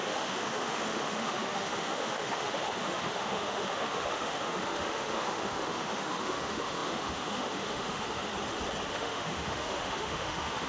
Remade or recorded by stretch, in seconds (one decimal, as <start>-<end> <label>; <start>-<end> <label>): 0.0-8.3 remade; 8.3-8.9 recorded; 8.9-10.7 remade

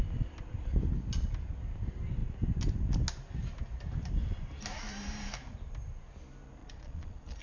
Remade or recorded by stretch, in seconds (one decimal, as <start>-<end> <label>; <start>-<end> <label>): 0.0-6.6 recorded; 6.6-7.4 remade